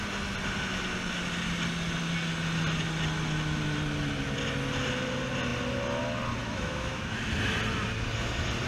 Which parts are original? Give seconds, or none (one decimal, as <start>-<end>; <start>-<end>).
0.0-6.4; 7.2-8.7